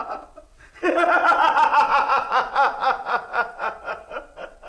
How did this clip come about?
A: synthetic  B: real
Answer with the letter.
A